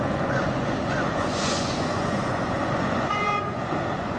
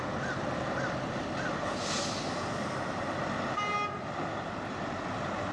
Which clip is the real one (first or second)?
second